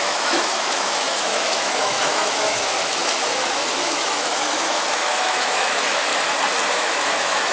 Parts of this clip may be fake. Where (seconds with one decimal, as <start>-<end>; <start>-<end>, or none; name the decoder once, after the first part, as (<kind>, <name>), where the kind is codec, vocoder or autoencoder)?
0.0-6.1 (autoencoder, DAC-VAE); 6.7-7.5